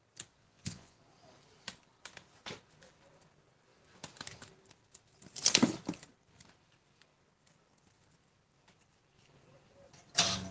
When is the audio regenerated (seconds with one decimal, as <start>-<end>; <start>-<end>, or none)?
0.4-1.0